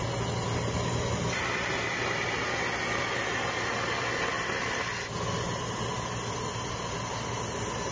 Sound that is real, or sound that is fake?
real